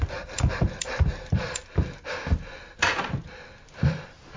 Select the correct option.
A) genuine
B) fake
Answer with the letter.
A